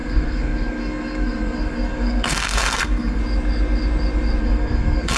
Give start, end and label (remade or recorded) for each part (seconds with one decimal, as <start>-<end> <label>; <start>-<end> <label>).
0.0-3.2 remade; 3.2-4.4 recorded; 4.4-5.2 remade